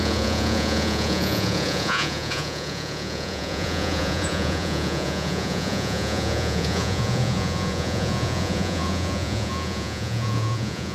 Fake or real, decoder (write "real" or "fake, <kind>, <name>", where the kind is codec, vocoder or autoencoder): fake, vocoder, Vocos